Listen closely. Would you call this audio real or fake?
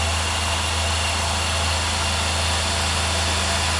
real